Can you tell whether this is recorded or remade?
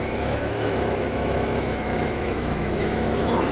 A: remade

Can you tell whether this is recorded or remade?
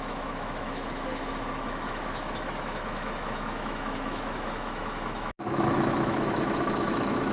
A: remade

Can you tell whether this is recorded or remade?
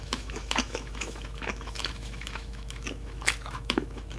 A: remade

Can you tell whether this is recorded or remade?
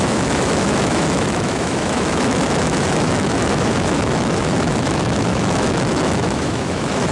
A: remade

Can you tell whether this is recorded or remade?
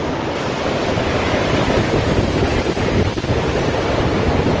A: recorded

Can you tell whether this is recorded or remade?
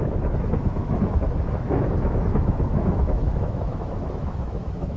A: remade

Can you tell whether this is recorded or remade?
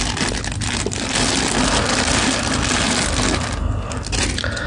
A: recorded